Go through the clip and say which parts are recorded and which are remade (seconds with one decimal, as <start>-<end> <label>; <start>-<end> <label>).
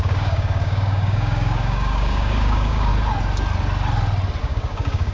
0.0-2.9 remade; 2.9-4.4 recorded; 4.4-5.1 remade